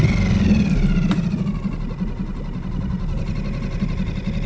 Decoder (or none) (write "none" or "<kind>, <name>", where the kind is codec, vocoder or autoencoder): none